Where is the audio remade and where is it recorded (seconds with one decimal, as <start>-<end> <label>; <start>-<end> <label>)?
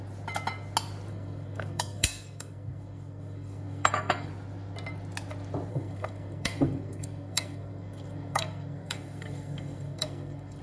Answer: 0.0-1.1 recorded; 1.1-4.3 remade; 4.3-5.7 recorded; 5.7-10.6 remade